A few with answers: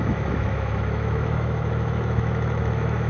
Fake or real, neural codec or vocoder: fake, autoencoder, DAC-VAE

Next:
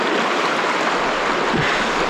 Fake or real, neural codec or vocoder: real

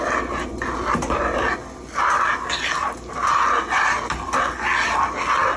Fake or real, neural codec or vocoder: real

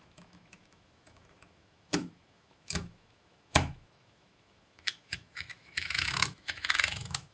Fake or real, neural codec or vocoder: fake, autoencoder, DAC-VAE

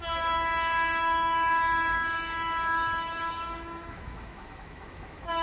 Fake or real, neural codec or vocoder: fake, autoencoder, DAC-VAE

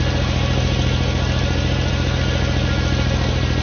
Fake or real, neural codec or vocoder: real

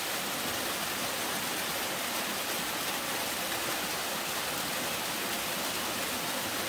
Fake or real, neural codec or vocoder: real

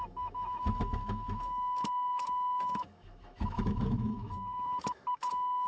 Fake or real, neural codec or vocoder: fake, autoencoder, DAC-VAE